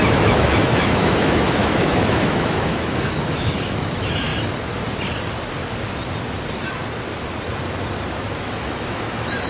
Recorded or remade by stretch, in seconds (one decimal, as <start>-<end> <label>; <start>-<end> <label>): 0.0-4.3 remade; 4.3-8.4 recorded; 8.4-9.5 remade